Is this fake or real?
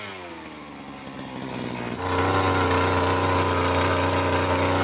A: real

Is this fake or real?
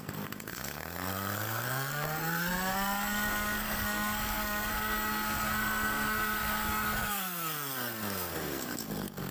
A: fake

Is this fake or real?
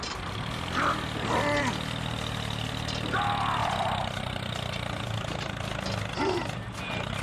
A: real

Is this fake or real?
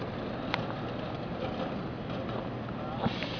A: real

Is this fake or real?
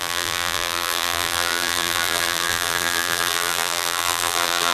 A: fake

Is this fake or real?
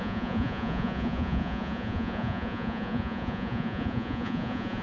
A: fake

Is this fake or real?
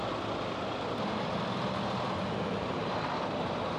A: real